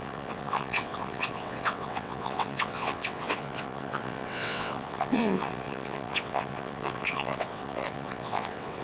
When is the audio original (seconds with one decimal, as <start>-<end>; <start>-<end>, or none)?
none